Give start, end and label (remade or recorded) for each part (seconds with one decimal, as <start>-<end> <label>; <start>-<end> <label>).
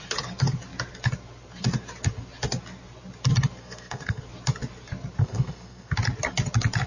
0.0-3.6 recorded; 3.6-4.2 remade; 4.2-5.2 recorded; 5.2-5.9 remade; 5.9-6.9 recorded